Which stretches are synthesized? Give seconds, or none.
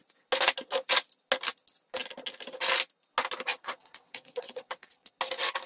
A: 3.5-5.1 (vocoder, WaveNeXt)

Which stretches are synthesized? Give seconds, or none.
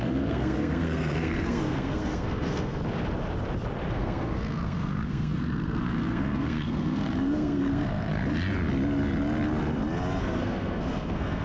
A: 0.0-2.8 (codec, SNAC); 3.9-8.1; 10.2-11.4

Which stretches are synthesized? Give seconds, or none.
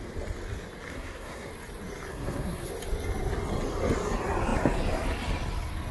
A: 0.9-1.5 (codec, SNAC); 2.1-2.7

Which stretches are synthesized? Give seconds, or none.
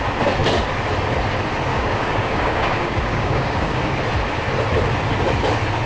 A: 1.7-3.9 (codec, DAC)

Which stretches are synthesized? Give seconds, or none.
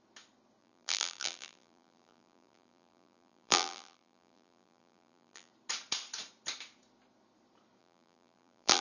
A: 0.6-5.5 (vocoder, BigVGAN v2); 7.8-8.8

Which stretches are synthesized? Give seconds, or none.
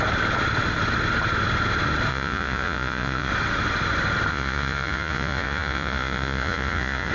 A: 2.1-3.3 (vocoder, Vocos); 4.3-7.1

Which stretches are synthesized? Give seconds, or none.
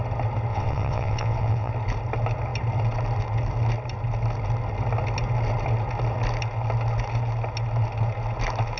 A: 0.5-1.7 (vocoder, WaveNeXt)